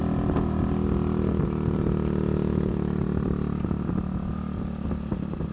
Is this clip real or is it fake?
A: real